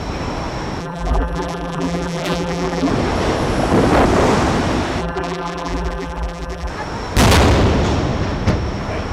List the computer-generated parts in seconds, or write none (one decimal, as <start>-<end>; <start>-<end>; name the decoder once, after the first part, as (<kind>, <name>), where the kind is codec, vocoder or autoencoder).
0.8-2.9 (vocoder, BigVGAN v2); 5.0-6.7